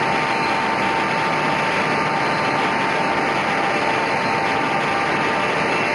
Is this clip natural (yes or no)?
yes